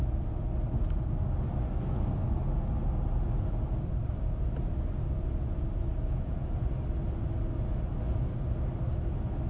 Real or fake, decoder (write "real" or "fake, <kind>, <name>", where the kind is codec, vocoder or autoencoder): real